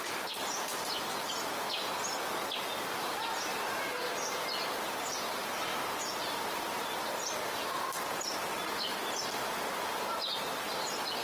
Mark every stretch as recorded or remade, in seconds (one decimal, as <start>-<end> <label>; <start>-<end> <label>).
0.0-11.2 recorded